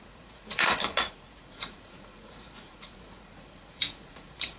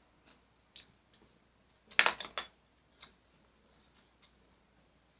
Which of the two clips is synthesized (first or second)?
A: first